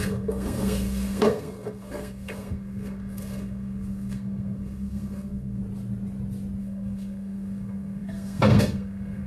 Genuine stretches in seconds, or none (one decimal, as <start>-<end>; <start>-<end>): 5.6-6.6